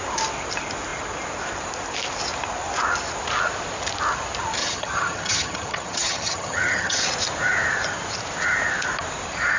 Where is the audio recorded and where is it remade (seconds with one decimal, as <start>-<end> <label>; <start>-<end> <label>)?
0.0-4.6 recorded; 4.6-7.0 remade; 7.0-9.6 recorded